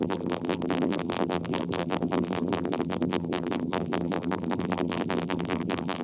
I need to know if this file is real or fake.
fake